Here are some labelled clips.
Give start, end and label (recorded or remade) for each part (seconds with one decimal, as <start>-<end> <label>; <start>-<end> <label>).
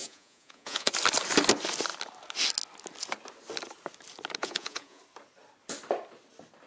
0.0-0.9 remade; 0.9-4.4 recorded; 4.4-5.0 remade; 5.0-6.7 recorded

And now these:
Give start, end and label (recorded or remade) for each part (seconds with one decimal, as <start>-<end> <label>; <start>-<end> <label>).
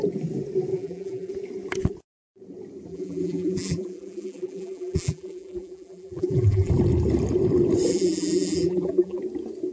0.0-0.7 recorded; 0.7-1.3 remade; 1.3-2.9 recorded; 2.9-6.7 remade; 6.7-7.9 recorded; 7.9-9.2 remade; 9.2-9.7 recorded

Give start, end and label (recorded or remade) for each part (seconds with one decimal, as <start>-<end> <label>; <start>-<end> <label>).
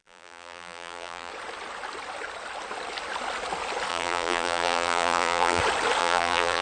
0.0-1.3 remade; 1.3-3.9 recorded; 3.9-5.6 remade; 5.6-6.0 recorded; 6.0-6.6 remade